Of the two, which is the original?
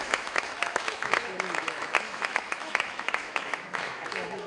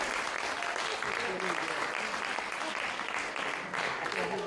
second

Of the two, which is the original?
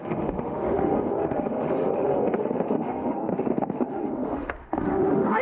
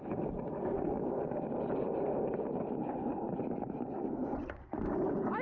second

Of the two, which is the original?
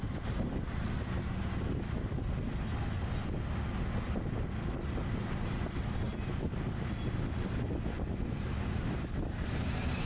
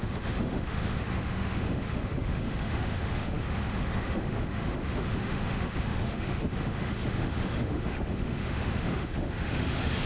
first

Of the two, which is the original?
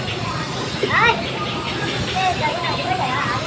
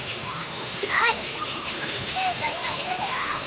first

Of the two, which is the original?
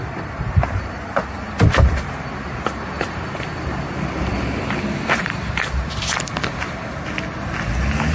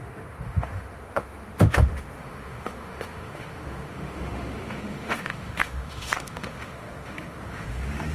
first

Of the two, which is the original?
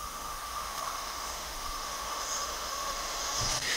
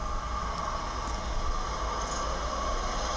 second